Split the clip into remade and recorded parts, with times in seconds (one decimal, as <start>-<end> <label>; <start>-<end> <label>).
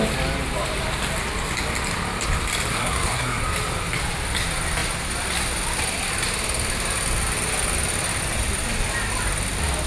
0.0-2.7 recorded; 2.7-3.4 remade; 3.4-9.9 recorded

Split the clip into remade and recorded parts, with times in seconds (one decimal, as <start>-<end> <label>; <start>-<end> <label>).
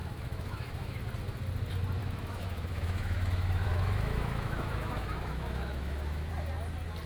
0.0-1.0 remade; 1.0-2.0 recorded; 2.0-6.3 remade; 6.3-7.1 recorded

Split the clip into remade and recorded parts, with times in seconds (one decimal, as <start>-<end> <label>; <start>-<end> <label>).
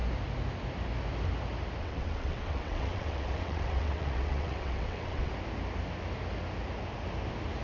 0.0-1.8 recorded; 1.8-5.3 remade; 5.3-7.6 recorded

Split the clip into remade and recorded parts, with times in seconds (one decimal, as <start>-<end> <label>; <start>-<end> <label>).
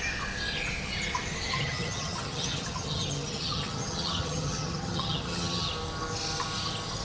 0.0-1.5 recorded; 1.5-5.7 remade; 5.7-7.0 recorded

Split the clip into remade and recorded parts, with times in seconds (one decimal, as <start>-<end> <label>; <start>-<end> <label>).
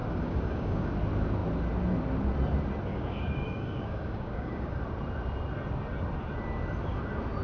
0.0-0.9 remade; 0.9-2.9 recorded; 2.9-4.8 remade; 4.8-7.4 recorded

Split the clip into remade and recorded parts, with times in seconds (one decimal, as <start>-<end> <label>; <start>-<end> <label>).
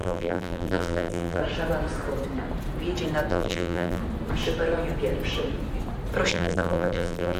0.0-1.4 remade; 1.4-3.3 recorded; 3.3-4.0 remade; 4.0-6.3 recorded; 6.3-7.4 remade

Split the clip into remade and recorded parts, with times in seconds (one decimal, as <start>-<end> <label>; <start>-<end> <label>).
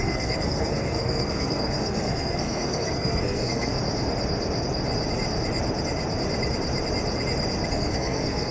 0.0-3.7 remade; 3.7-7.7 recorded; 7.7-8.5 remade